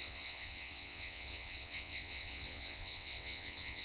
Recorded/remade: remade